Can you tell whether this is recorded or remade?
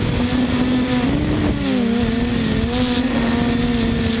recorded